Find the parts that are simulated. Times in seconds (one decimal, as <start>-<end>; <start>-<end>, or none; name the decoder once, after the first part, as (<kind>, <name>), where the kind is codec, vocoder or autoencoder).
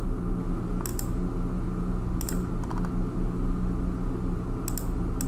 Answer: none